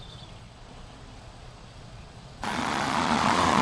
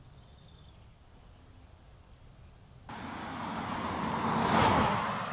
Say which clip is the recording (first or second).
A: second